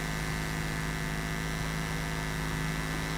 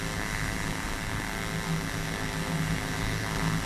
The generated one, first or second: second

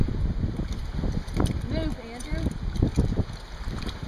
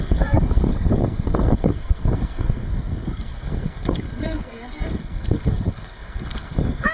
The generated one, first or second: second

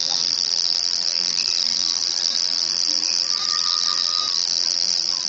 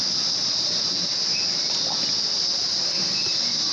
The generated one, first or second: first